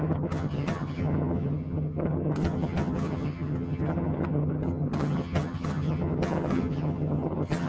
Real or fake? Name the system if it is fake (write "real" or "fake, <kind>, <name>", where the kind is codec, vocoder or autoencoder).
fake, vocoder, HiFi-GAN